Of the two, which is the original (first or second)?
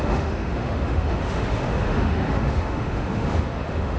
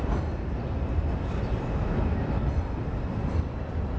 second